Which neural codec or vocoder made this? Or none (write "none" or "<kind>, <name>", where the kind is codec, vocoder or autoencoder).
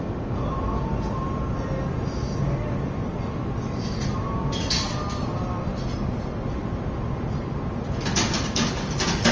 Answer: none